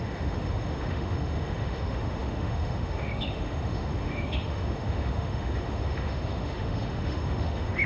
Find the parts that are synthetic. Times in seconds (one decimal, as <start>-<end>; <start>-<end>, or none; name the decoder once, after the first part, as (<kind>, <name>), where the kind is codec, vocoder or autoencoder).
0.0-7.9 (autoencoder, DAC-VAE)